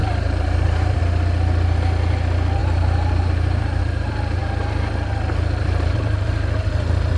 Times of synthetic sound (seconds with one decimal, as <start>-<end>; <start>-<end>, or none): 0.0-1.0; 2.6-3.8; 5.6-6.3